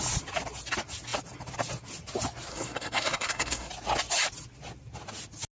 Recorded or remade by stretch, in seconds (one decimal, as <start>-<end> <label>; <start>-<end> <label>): 0.0-2.5 recorded; 2.5-3.7 remade; 3.7-5.5 recorded